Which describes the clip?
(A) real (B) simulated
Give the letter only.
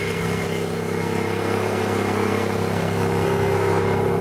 B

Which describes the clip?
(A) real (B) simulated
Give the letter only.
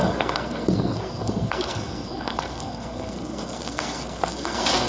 B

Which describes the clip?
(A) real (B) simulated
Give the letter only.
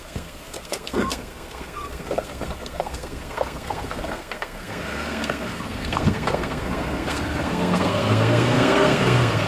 B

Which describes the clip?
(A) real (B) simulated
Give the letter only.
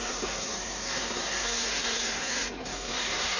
B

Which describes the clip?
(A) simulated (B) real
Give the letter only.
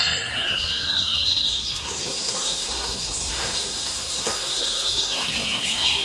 A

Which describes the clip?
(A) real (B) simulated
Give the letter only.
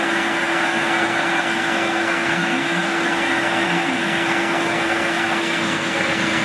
B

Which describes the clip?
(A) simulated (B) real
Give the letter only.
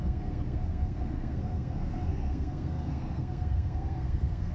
A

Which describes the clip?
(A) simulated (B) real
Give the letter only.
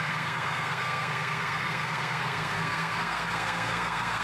A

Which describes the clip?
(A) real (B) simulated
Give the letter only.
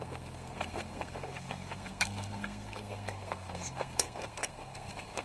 B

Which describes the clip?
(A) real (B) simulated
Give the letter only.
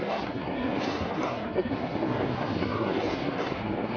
B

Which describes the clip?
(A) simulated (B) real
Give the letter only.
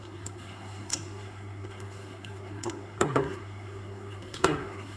A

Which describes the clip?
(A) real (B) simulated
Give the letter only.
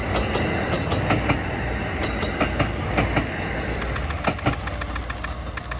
A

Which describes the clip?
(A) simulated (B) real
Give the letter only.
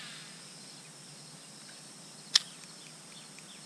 B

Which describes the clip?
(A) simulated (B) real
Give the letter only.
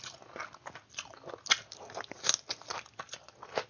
B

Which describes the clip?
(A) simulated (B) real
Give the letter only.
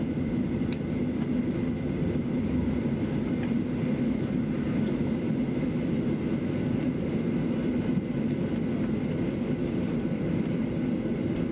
B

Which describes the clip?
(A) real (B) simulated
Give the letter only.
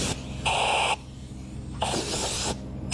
A